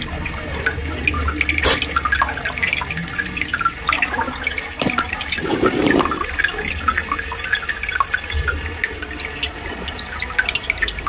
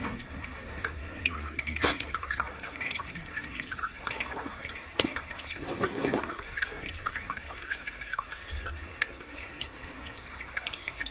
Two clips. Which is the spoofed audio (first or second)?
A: second